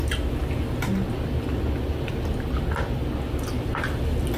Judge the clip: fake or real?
real